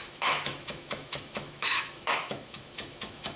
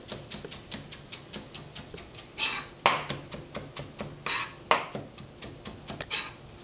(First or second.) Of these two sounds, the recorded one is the second